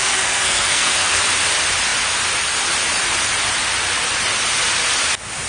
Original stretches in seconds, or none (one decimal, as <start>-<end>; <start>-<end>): 1.2-5.5